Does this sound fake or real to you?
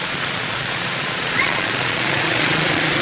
fake